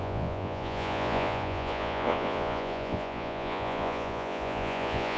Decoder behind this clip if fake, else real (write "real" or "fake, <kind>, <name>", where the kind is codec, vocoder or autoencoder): fake, vocoder, Vocos